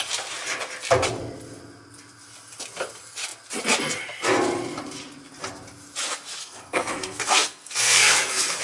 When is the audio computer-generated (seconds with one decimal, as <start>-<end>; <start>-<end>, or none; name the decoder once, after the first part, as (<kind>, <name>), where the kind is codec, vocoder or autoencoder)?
6.4-8.6 (codec, SNAC)